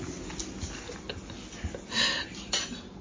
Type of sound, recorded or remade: recorded